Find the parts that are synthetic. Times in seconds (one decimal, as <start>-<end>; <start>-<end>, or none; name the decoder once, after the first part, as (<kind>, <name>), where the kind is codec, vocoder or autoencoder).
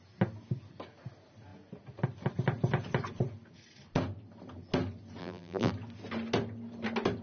5.2-5.7 (vocoder, BigVGAN v2)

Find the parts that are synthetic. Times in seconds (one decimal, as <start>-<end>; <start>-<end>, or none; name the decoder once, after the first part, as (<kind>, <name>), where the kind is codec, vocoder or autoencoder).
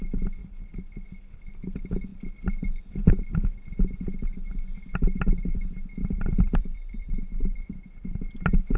0.4-1.4 (vocoder, BigVGAN v2); 6.0-8.3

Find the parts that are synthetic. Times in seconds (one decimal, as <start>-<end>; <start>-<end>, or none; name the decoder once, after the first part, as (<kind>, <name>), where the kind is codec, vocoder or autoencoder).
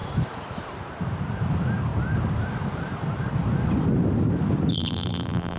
4.7-5.6 (vocoder, BigVGAN v2)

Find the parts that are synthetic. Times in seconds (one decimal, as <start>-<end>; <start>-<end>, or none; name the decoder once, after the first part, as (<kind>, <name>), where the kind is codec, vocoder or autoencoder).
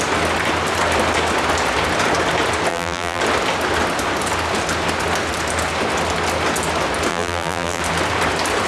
2.7-3.2 (vocoder, BigVGAN v2); 7.1-7.8